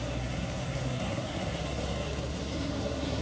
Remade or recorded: remade